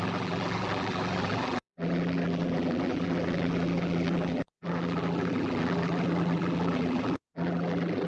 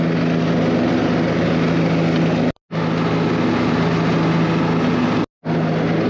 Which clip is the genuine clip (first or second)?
second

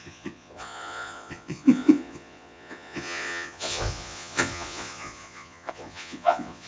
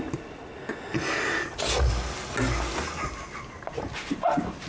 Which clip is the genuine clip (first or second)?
second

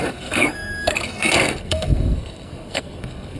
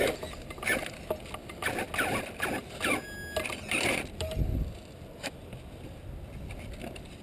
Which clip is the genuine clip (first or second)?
second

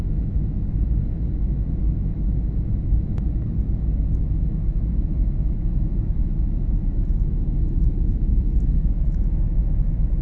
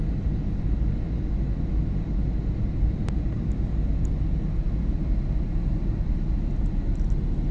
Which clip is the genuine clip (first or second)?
second